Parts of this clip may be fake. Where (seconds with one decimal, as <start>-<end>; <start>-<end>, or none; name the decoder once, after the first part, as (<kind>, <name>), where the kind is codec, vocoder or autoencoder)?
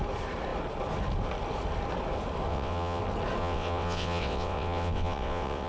2.5-3.0 (vocoder, WaveNeXt); 3.4-5.7